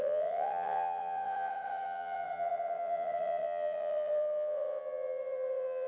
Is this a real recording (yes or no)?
no